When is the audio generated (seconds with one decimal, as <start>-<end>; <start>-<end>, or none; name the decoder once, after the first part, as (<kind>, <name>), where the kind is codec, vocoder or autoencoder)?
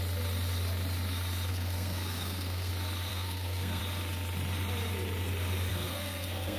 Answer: 1.5-2.7 (codec, SNAC); 3.1-3.8; 5.7-6.6